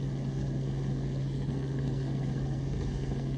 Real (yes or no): no